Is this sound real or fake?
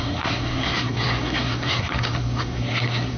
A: fake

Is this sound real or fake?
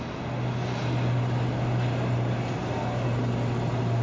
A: real